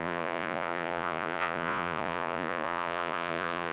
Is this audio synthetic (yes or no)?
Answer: yes